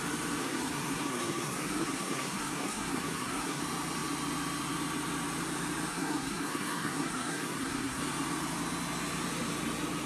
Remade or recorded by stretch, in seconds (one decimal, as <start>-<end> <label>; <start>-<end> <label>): 0.0-0.4 recorded; 0.4-3.6 remade; 3.6-5.9 recorded; 5.9-8.0 remade; 8.0-10.1 recorded